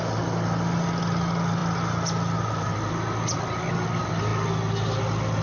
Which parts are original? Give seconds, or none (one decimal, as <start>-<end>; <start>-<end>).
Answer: 0.0-5.4